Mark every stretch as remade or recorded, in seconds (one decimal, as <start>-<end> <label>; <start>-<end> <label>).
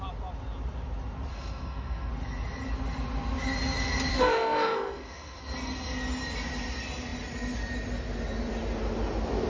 0.0-1.3 recorded; 1.3-2.1 remade; 2.1-4.1 recorded; 4.1-5.4 remade; 5.4-9.5 recorded